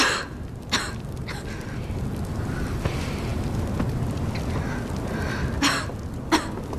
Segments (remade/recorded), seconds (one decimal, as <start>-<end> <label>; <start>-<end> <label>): 0.0-6.8 recorded